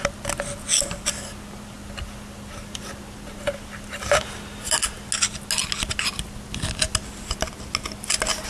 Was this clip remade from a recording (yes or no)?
no